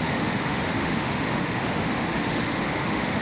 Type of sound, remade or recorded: remade